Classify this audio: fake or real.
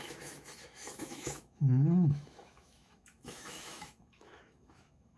fake